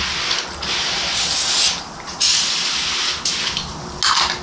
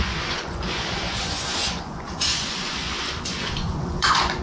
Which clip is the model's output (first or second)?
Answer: second